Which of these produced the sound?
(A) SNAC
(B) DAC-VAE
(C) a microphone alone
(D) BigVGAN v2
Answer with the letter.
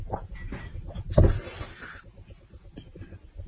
C